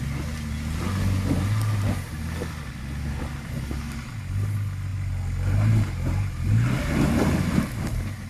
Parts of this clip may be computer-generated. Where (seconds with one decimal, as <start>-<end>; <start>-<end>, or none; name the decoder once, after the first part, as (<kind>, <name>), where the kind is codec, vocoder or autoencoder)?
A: none